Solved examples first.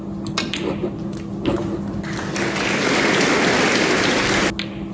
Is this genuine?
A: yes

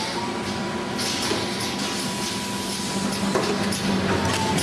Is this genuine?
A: yes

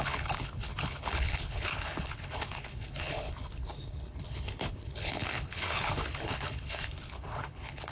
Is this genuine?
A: no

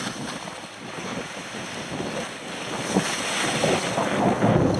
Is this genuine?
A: yes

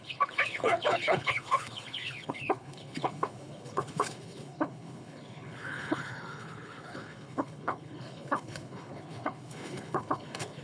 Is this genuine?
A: no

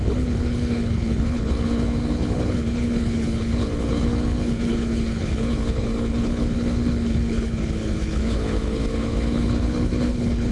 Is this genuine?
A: no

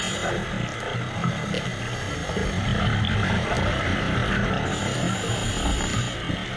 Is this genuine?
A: yes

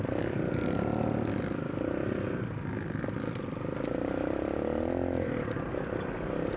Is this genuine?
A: yes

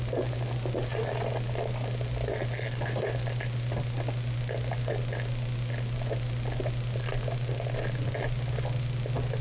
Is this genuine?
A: yes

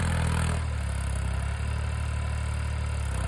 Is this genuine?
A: yes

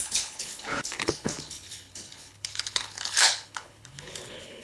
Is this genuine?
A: no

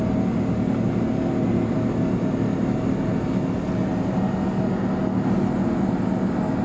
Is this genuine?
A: yes